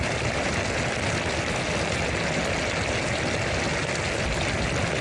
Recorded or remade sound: recorded